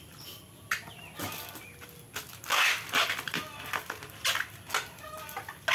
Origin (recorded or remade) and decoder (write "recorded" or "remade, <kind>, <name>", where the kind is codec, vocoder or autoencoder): recorded